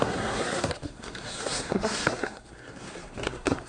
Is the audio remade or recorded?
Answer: remade